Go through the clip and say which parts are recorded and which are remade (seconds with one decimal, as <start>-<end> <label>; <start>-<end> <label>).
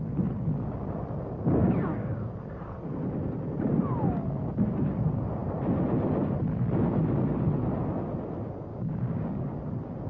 0.0-1.6 recorded; 1.6-2.4 remade; 2.4-8.7 recorded; 8.7-9.6 remade; 9.6-10.1 recorded